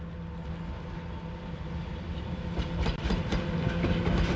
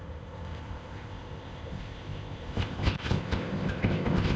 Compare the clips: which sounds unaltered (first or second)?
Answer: first